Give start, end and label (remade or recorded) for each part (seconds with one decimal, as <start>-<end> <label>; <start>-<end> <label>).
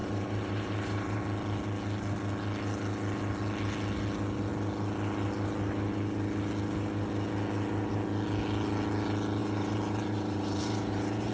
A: 0.0-1.2 remade; 1.2-9.4 recorded; 9.4-11.3 remade